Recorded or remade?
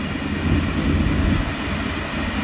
recorded